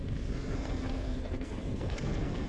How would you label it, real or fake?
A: fake